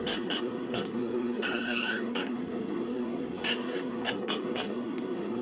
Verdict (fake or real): fake